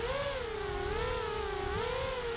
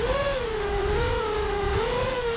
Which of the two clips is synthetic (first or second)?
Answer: second